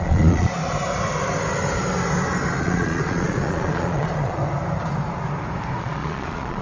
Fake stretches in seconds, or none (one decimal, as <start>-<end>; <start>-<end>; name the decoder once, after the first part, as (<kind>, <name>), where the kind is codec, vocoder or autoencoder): 0.0-0.6 (vocoder, Vocos); 2.6-4.4; 5.8-6.6